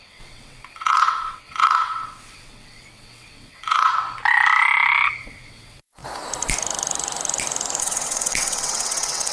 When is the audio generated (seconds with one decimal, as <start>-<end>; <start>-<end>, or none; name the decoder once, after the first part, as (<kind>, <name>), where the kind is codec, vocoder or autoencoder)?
0.0-3.9 (vocoder, WaveNeXt); 5.2-6.0; 7.8-9.3